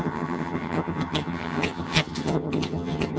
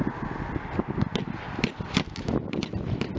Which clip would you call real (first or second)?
second